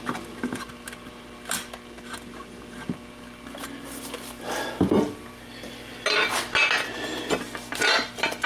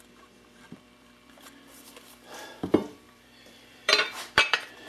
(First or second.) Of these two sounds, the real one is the first